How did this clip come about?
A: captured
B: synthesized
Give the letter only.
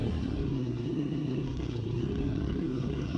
B